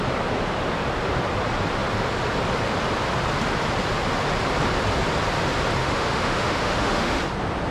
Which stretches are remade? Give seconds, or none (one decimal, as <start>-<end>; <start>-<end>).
5.8-7.2